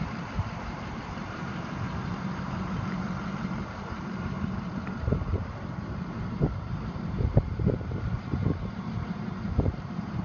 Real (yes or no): no